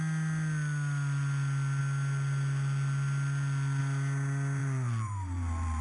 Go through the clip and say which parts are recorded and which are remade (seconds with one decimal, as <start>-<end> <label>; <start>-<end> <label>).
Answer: 0.0-4.6 recorded; 4.6-5.8 remade